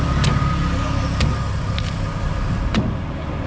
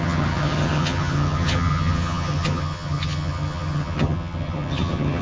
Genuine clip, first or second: first